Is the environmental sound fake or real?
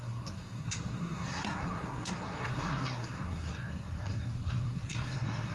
fake